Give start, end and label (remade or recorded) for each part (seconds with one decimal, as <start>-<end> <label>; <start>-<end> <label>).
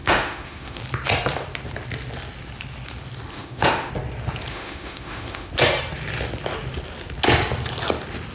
0.0-0.8 remade; 0.8-3.3 recorded; 3.3-3.9 remade; 3.9-4.5 recorded; 4.5-5.5 remade; 5.5-8.3 recorded